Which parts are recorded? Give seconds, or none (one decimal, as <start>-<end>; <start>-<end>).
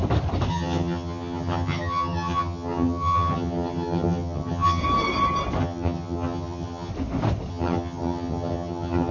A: 0.0-0.5; 4.8-5.6; 6.9-7.5